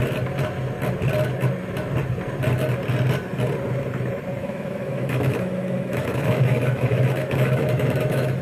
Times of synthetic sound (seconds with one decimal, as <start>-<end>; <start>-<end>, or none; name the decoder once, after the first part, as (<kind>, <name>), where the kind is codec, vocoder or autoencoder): 4.4-8.4 (autoencoder, DAC-VAE)